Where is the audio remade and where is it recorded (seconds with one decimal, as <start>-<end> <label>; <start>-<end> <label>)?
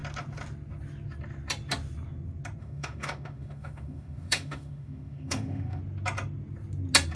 0.0-2.6 recorded; 2.6-5.8 remade; 5.8-7.2 recorded